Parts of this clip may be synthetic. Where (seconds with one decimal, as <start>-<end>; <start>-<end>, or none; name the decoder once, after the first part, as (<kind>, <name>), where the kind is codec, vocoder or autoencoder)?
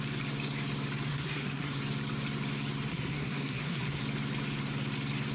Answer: 1.1-1.8 (codec, SNAC); 2.9-4.0